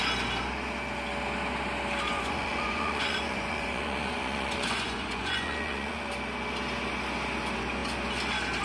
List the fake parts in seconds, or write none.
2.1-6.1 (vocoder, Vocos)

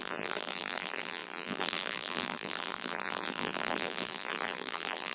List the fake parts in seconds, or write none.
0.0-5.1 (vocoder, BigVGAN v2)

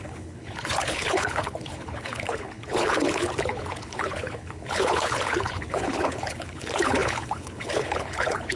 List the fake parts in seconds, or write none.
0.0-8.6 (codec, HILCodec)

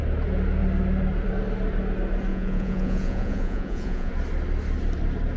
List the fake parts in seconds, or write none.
2.3-4.1 (vocoder, Vocos)